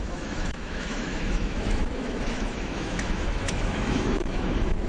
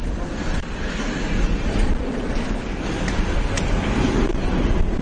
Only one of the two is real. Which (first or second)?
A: second